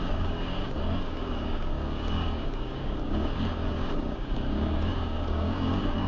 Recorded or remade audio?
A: remade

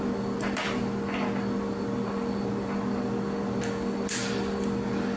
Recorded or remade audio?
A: recorded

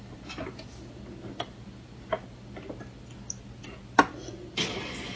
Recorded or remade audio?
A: recorded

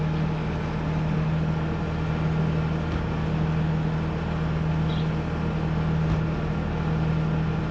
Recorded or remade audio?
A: recorded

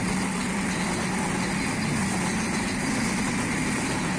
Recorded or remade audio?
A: recorded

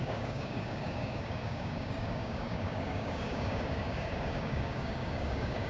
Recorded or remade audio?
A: remade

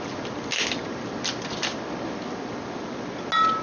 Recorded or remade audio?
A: recorded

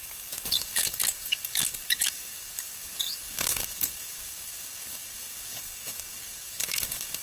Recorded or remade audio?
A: remade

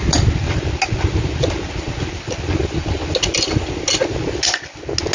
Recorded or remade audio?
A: recorded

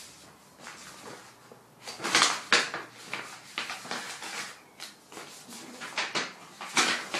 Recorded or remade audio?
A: recorded